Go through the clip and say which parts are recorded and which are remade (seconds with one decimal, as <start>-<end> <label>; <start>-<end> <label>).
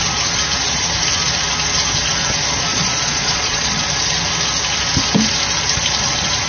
0.0-2.7 recorded; 2.7-3.8 remade; 3.8-6.5 recorded